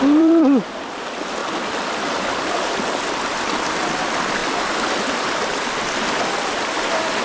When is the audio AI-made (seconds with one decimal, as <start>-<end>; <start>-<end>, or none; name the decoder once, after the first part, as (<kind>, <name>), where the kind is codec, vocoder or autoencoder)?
0.0-1.4 (vocoder, BigVGAN v2); 2.2-4.4; 5.2-7.2